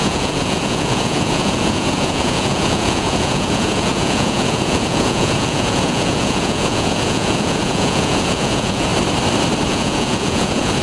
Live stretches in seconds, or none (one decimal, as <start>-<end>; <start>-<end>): 8.9-9.7